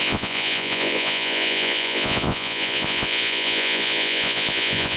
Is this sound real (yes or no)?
no